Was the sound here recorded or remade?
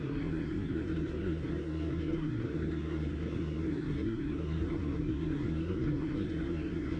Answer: remade